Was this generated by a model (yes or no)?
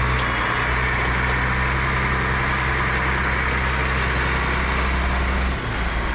no